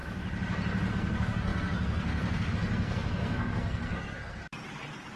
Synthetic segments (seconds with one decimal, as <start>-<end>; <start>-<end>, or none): 0.9-4.4